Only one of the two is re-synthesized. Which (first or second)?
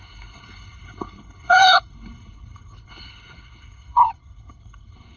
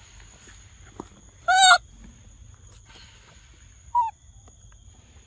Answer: first